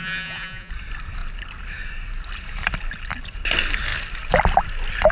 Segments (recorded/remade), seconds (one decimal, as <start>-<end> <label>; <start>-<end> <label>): 0.0-0.7 remade; 0.7-5.1 recorded